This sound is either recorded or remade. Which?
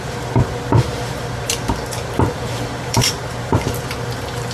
remade